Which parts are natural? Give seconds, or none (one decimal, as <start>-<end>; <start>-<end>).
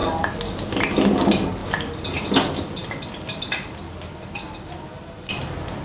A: 0.7-5.8